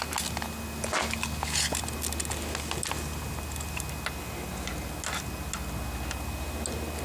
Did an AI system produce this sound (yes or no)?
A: no